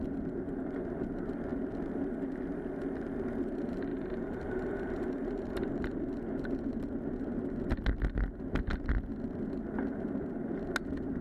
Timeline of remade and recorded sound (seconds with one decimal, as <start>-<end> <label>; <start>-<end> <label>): 0.0-3.9 recorded; 3.9-6.1 remade; 6.1-11.2 recorded